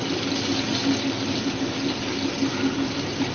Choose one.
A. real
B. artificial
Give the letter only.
A